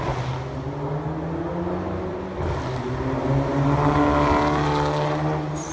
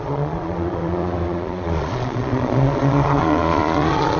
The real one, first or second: first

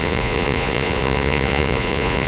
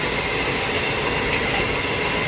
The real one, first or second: second